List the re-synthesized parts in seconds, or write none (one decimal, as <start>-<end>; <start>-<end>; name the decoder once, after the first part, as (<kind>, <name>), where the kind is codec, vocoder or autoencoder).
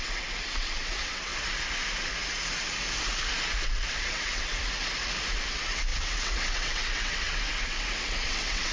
0.0-1.3 (vocoder, WaveNeXt); 3.6-4.6; 5.3-8.7